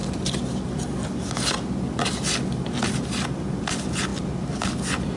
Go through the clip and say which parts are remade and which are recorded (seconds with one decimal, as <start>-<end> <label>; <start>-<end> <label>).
0.0-5.2 recorded